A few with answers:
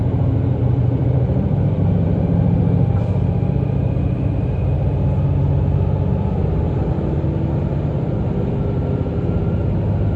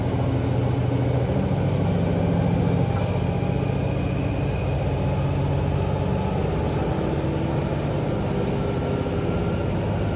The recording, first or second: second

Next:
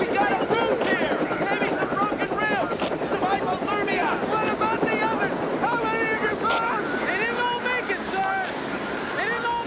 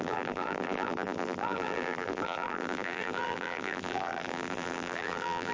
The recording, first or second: first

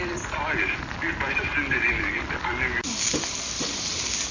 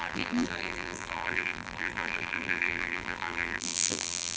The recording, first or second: first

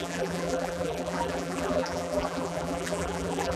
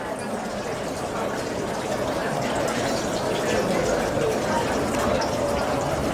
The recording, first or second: second